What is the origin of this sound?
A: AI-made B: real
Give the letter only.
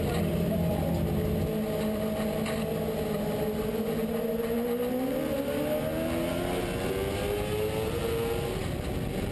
B